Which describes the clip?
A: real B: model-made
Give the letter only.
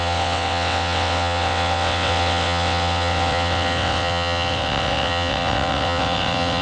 B